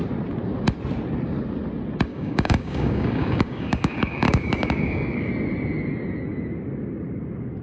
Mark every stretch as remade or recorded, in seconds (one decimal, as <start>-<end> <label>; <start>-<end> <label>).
0.0-2.1 recorded; 2.1-5.3 remade; 5.3-7.6 recorded